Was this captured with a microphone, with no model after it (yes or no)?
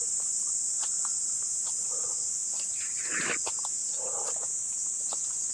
yes